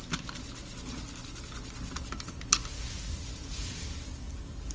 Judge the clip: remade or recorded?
recorded